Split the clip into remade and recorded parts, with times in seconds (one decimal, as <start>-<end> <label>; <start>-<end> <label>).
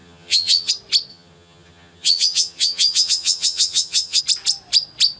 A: 0.0-0.7 remade; 0.7-1.1 recorded; 1.1-4.2 remade; 4.2-5.2 recorded